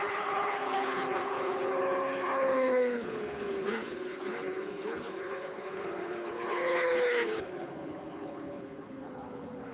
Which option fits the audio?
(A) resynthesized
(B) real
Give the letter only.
A